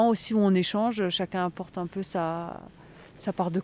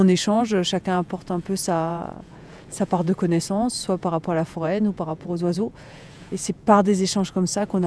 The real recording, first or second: first